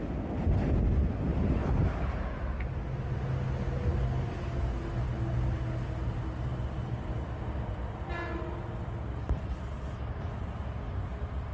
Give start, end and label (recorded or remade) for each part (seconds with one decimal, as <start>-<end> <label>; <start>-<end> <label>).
0.0-11.5 recorded